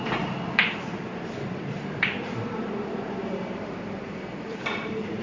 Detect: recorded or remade remade